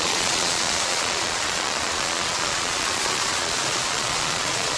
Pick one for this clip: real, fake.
fake